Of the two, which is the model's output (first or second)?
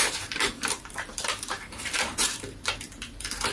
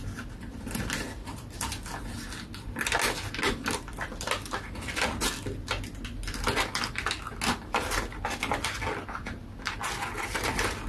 first